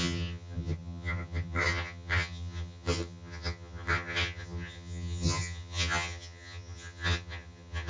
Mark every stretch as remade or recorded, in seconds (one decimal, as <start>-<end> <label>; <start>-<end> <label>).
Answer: 0.0-7.9 remade